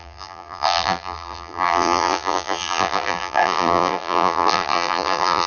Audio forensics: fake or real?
fake